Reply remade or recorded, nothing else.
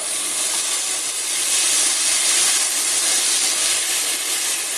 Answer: recorded